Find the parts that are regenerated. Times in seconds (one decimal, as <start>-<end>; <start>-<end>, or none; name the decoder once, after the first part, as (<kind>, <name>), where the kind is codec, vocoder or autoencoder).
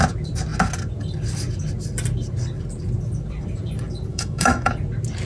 4.1-4.7 (autoencoder, DAC-VAE)